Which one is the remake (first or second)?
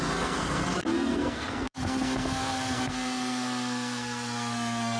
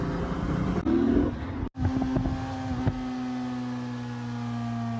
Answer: first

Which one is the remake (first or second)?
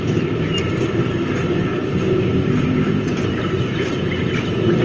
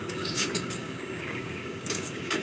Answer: second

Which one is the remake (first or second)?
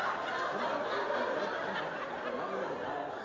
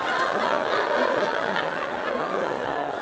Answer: second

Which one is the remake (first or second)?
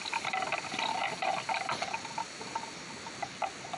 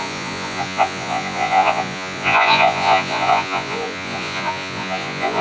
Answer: second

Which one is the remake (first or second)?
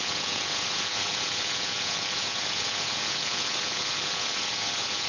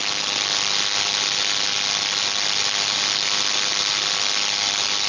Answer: first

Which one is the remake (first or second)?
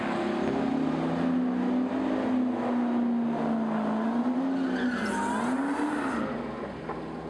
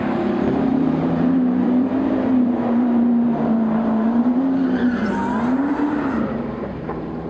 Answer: second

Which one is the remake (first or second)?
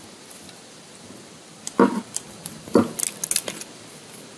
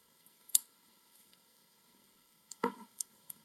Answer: second